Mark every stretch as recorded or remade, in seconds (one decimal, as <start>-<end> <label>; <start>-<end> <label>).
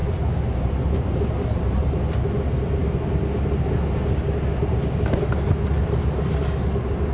0.0-2.0 remade; 2.0-7.1 recorded